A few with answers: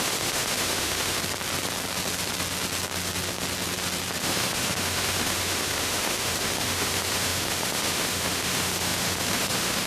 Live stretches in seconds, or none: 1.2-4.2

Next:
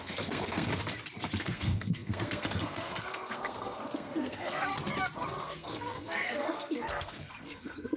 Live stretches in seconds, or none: 0.7-1.4; 4.6-5.4

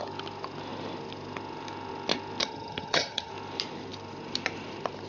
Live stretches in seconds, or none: 0.0-2.4; 3.3-5.1

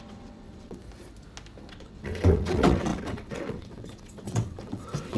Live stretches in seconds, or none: 0.8-1.7

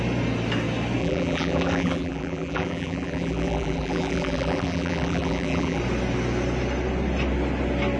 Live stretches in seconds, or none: 0.0-1.0; 5.8-8.0

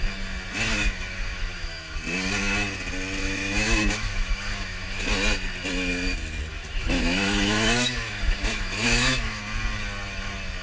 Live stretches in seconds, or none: 0.0-0.7; 2.0-3.2; 5.0-6.5; 9.4-10.6

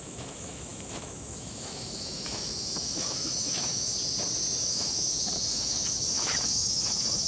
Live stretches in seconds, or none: 3.9-4.6